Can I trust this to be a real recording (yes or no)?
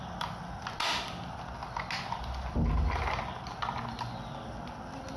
yes